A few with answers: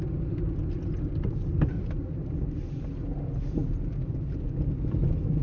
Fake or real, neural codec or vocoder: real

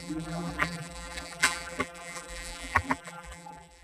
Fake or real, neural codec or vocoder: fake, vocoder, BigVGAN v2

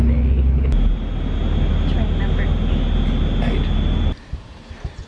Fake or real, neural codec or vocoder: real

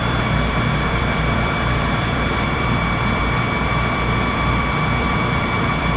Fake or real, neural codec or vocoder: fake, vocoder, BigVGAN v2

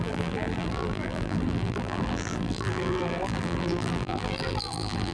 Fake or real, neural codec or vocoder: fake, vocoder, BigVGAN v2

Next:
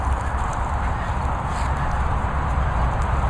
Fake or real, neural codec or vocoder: real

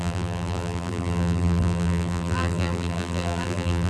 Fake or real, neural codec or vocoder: fake, vocoder, BigVGAN v2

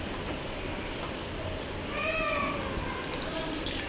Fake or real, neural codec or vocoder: real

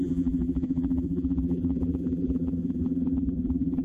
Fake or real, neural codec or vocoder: fake, vocoder, BigVGAN v2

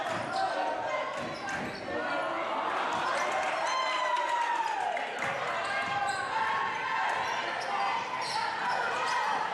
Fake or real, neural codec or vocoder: real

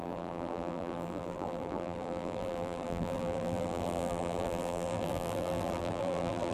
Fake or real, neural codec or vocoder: fake, vocoder, BigVGAN v2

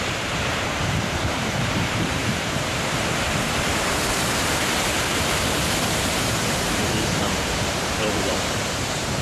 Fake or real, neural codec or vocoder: fake, vocoder, BigVGAN v2